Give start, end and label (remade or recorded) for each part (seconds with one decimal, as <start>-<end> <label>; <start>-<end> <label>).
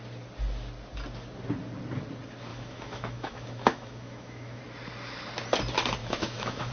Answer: 0.0-2.5 recorded; 2.5-4.6 remade; 4.6-6.0 recorded; 6.0-6.7 remade